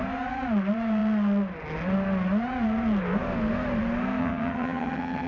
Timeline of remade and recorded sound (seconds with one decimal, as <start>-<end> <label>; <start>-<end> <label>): 0.0-4.2 recorded; 4.2-5.3 remade